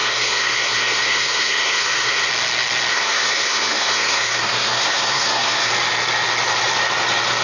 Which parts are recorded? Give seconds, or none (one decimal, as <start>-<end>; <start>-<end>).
2.3-2.9; 5.7-7.4